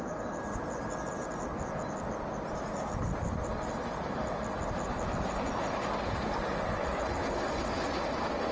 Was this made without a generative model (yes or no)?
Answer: yes